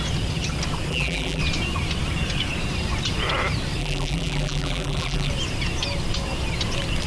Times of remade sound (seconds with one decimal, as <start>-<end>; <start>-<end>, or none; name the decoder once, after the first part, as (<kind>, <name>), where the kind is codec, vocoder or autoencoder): 0.9-1.4 (vocoder, BigVGAN v2); 3.8-5.3